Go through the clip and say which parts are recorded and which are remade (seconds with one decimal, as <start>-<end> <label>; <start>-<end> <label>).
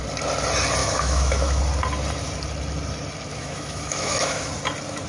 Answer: 0.0-0.8 recorded; 0.8-1.6 remade; 1.6-3.3 recorded; 3.3-4.5 remade; 4.5-5.1 recorded